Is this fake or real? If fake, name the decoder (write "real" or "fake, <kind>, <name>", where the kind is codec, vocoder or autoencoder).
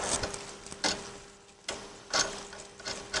real